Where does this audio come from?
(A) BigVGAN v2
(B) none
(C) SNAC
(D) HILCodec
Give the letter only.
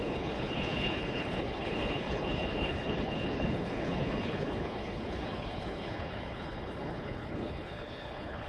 D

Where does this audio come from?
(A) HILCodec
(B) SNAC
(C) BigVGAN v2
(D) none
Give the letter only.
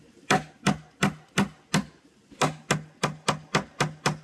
D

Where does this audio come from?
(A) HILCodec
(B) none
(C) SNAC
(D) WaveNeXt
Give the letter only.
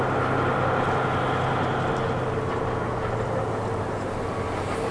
B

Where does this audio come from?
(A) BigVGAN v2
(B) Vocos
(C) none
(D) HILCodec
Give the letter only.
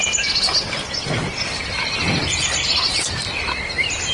C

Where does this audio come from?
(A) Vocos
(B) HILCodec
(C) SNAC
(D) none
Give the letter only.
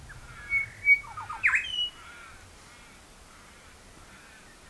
D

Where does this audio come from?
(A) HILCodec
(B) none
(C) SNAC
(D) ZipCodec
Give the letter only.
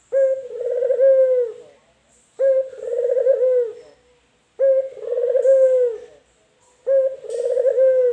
B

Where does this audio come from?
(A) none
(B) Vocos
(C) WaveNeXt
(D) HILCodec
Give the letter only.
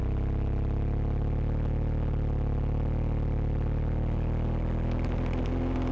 A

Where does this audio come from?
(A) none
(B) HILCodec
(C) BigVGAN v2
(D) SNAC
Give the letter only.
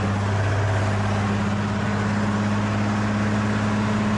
A